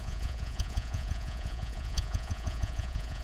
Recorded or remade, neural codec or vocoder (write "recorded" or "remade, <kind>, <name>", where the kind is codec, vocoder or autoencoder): remade, vocoder, Vocos